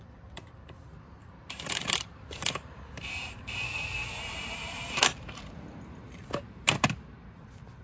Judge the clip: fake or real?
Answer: fake